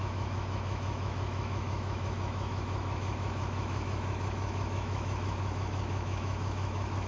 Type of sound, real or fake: fake